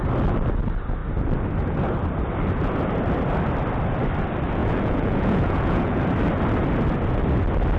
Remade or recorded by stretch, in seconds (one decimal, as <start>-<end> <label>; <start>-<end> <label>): 0.0-4.6 recorded; 4.6-6.0 remade; 6.0-7.8 recorded